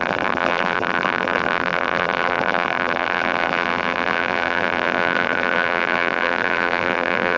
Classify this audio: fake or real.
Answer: fake